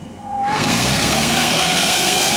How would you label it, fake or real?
fake